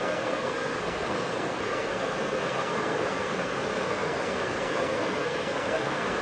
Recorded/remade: remade